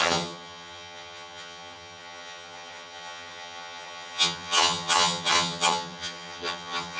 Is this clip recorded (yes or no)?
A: no